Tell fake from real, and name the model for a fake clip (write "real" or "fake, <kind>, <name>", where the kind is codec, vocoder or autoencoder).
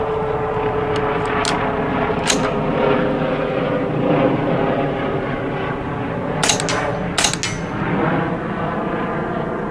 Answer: real